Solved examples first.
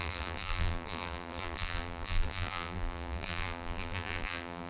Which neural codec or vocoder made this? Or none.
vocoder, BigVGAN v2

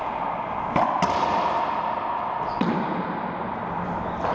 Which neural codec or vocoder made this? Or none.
none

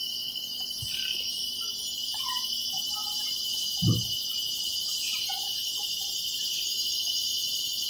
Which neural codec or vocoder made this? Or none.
vocoder, BigVGAN v2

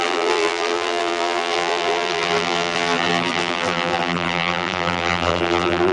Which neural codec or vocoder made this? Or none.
vocoder, BigVGAN v2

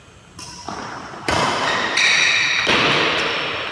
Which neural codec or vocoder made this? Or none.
none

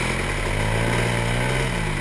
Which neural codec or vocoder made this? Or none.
none